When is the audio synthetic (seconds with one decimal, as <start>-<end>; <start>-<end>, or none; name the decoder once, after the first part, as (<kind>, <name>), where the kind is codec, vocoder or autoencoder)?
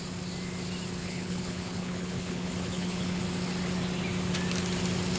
1.0-3.2 (codec, HILCodec)